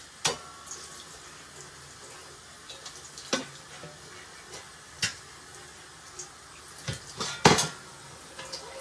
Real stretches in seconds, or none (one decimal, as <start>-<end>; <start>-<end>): 0.0-8.8